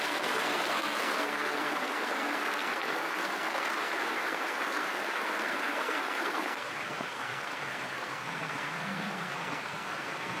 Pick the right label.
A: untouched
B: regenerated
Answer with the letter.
B